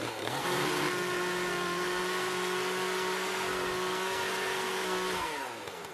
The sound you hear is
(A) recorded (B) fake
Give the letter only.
B